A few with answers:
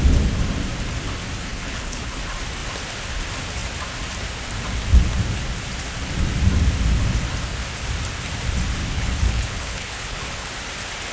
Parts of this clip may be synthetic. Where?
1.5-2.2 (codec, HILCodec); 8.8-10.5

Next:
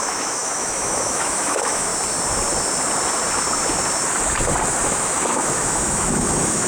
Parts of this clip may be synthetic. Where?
0.0-1.9 (autoencoder, DAC-VAE); 4.8-6.7

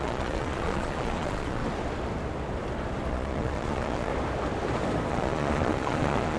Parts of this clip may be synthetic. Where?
0.0-1.6 (vocoder, Vocos); 3.1-4.1; 5.1-6.4

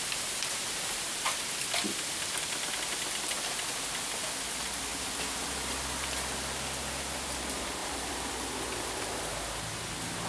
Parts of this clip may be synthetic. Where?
4.9-5.6 (vocoder, BigVGAN v2); 7.8-8.3